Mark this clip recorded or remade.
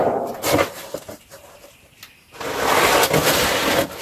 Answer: recorded